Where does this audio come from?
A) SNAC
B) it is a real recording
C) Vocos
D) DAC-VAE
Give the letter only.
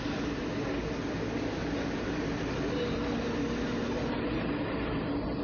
B